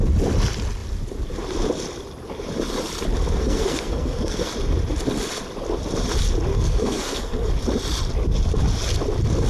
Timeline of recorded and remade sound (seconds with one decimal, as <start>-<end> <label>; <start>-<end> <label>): 0.0-3.4 recorded; 3.4-4.5 remade; 4.5-6.5 recorded; 6.5-7.5 remade; 7.5-9.5 recorded

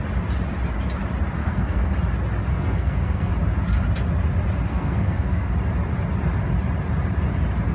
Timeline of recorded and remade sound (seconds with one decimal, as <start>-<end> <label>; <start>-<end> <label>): 0.0-1.4 recorded; 1.4-1.9 remade; 1.9-2.5 recorded; 2.5-3.3 remade; 3.3-4.7 recorded; 4.7-5.5 remade; 5.5-7.7 recorded